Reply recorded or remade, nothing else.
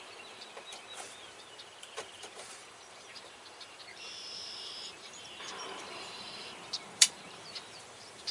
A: remade